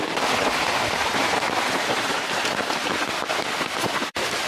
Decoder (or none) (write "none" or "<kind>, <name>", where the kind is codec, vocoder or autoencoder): none